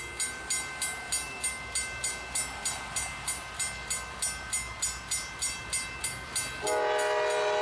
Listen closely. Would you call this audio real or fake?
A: real